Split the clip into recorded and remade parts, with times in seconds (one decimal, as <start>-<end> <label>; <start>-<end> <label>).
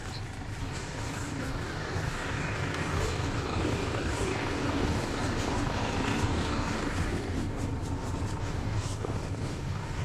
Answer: 0.0-0.6 recorded; 0.6-7.7 remade; 7.7-8.4 recorded; 8.4-10.0 remade